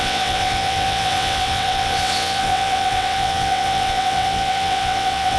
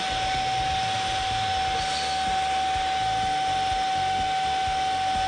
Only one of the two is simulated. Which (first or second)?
first